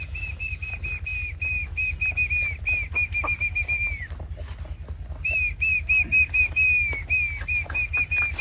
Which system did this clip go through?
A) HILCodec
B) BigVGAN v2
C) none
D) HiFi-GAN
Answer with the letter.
C